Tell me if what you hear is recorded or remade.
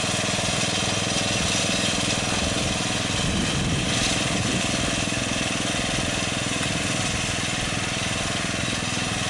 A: recorded